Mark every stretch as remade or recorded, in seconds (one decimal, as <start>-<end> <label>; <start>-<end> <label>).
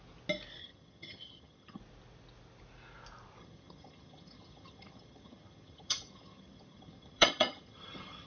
0.0-0.6 recorded; 0.6-1.8 remade; 1.8-3.4 recorded; 3.4-8.3 remade